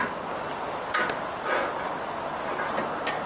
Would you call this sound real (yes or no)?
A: yes